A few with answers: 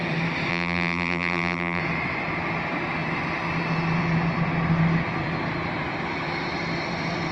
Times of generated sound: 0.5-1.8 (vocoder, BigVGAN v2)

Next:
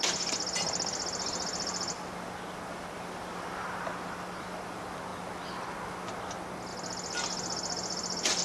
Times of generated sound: none

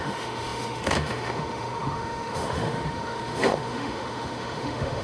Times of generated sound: 0.0-5.0 (autoencoder, DAC-VAE)

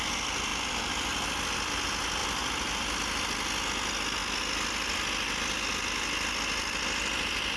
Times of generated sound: 0.5-1.7 (vocoder, BigVGAN v2); 2.2-2.9

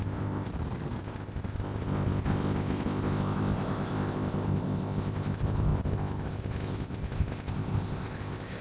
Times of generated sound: 0.0-0.5 (codec, ZipCodec); 1.0-8.6

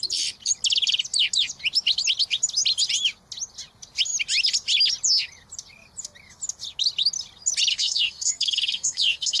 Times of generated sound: 7.7-9.4 (codec, SNAC)

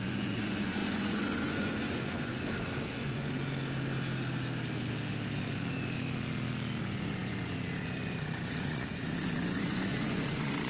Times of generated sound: 0.0-2.3 (vocoder, Vocos); 2.9-3.3; 6.8-10.7

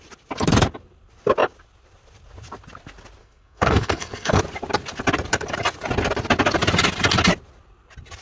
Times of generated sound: 3.2-4.4 (codec, SNAC)